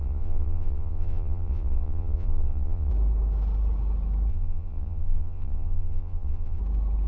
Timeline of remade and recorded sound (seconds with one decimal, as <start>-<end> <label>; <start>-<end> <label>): 0.0-2.9 remade; 2.9-4.3 recorded; 4.3-6.6 remade; 6.6-7.1 recorded